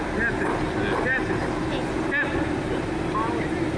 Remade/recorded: recorded